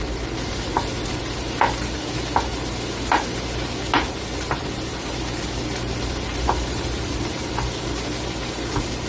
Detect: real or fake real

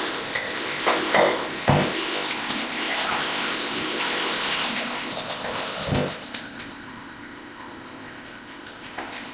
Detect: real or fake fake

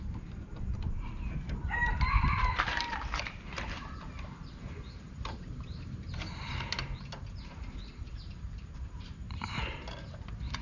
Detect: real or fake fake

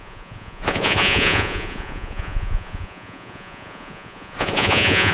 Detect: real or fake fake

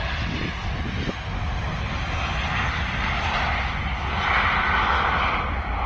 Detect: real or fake real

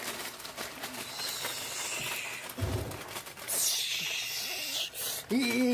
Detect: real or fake real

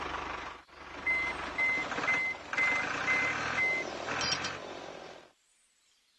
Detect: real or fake real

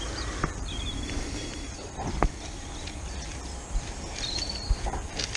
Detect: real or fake fake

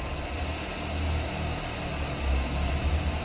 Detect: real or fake real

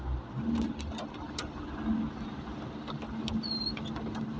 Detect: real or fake real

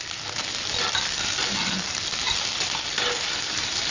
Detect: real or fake real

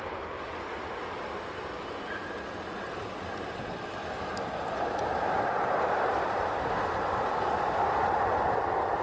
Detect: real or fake real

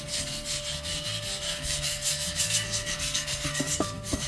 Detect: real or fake fake